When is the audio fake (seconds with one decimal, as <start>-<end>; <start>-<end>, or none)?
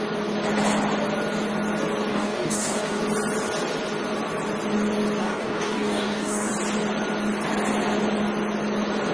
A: 2.1-3.0; 5.2-6.5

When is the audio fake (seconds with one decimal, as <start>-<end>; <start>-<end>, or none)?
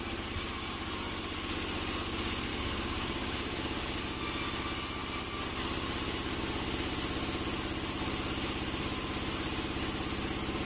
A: 2.5-4.0